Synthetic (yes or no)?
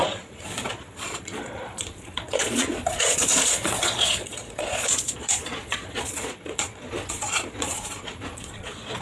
yes